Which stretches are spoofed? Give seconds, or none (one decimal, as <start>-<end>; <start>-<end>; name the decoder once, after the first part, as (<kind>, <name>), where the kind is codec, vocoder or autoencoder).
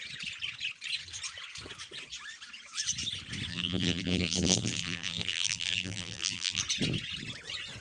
3.5-6.6 (vocoder, BigVGAN v2)